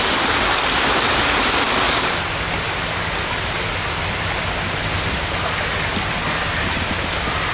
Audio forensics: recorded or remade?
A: recorded